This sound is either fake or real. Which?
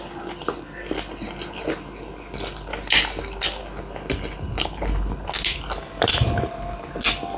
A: real